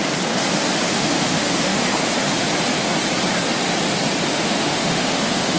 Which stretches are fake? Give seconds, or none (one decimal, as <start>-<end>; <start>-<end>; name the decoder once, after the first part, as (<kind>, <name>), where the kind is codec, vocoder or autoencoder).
0.9-2.1 (autoencoder, DAC-VAE); 4.3-5.6